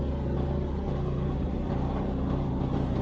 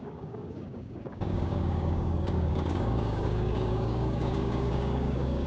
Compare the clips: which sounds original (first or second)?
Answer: first